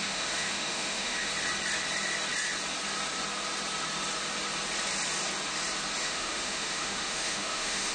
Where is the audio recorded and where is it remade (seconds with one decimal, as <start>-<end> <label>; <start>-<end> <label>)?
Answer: 0.0-1.3 remade; 1.3-6.0 recorded; 6.0-7.9 remade